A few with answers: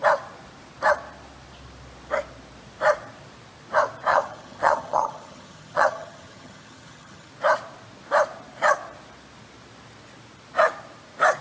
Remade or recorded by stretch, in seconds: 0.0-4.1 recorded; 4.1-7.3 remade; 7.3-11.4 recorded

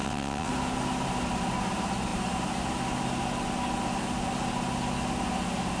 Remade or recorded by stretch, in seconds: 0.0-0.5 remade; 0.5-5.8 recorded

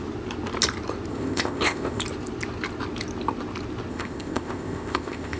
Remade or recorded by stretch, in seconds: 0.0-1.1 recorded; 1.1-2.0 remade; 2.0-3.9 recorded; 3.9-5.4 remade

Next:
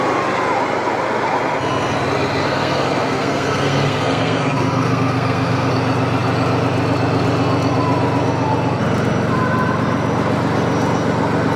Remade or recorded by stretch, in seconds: 0.0-2.4 recorded; 2.4-5.7 remade; 5.7-11.6 recorded